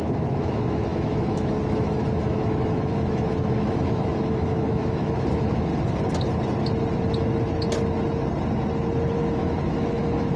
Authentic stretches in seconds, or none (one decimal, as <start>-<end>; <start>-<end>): 5.7-9.2